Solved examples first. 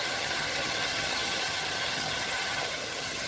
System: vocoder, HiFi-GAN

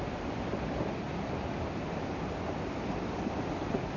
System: none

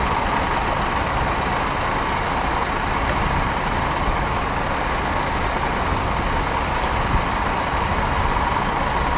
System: none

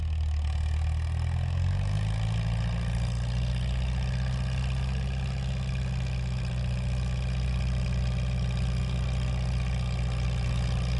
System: none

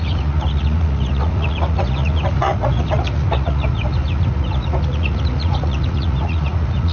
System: vocoder, Vocos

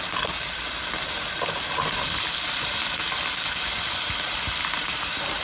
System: none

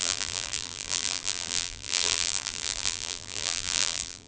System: vocoder, BigVGAN v2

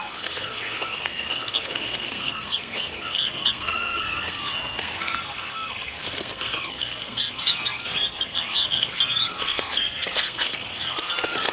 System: codec, SNAC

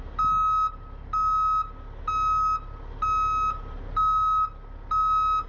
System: none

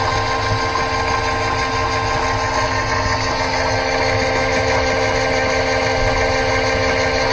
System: none